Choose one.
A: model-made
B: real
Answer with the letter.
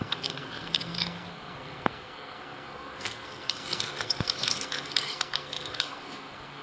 A